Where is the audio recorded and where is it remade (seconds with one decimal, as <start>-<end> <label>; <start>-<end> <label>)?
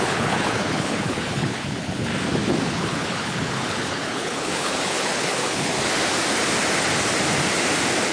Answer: 0.0-2.1 remade; 2.1-2.7 recorded; 2.7-5.7 remade; 5.7-8.1 recorded